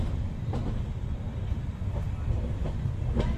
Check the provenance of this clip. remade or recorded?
recorded